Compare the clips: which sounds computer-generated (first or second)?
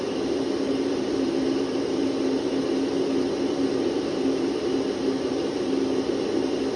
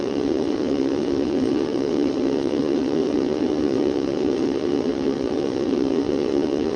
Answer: second